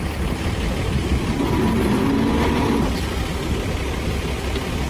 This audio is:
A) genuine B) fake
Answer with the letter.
A